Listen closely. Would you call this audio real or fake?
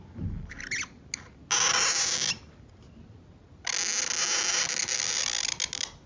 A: real